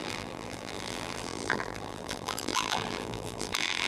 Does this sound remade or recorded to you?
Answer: remade